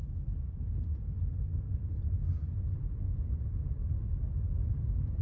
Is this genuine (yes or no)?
yes